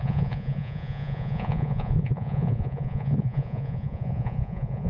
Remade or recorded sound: remade